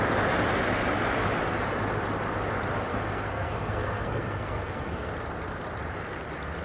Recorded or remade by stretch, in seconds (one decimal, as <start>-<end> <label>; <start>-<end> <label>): 0.0-2.9 recorded; 2.9-5.1 remade; 5.1-6.6 recorded